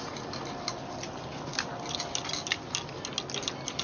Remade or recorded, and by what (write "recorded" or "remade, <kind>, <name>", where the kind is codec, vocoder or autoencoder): recorded